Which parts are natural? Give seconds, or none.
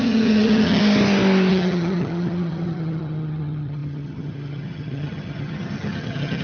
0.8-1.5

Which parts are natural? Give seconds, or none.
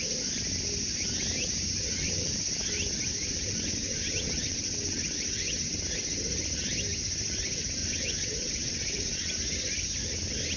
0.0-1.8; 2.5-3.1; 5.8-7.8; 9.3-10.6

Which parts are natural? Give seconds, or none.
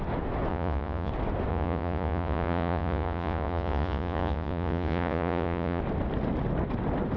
0.0-0.5; 1.1-1.5; 5.8-7.2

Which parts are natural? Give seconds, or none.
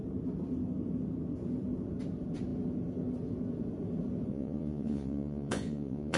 0.0-4.3